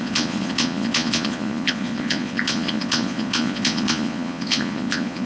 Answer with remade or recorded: remade